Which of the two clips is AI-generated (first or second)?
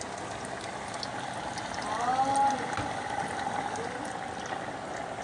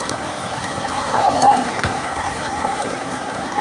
second